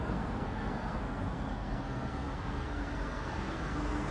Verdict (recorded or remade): remade